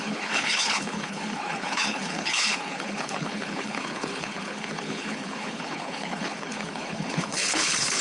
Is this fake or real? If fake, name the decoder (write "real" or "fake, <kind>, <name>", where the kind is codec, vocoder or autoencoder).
fake, codec, HILCodec